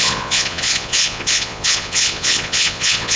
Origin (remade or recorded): remade